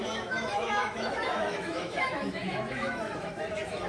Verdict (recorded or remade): remade